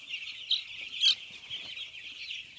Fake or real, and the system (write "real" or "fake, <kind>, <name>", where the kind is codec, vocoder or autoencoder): real